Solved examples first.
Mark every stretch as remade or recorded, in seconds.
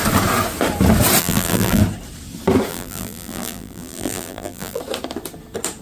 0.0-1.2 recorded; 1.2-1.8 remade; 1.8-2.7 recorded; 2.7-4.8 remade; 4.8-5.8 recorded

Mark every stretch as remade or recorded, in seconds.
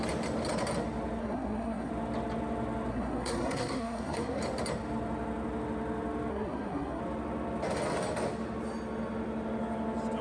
0.0-1.2 recorded; 1.2-1.9 remade; 1.9-2.9 recorded; 2.9-4.4 remade; 4.4-6.3 recorded; 6.3-7.0 remade; 7.0-10.2 recorded